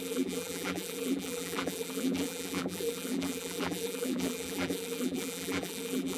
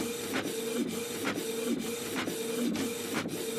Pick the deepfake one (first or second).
first